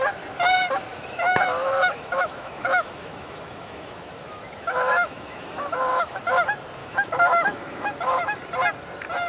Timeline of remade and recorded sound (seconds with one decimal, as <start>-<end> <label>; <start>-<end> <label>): 0.0-0.9 recorded; 0.9-6.2 remade; 6.2-6.8 recorded; 6.8-8.4 remade; 8.4-9.3 recorded